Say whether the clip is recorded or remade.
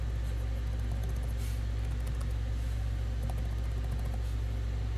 recorded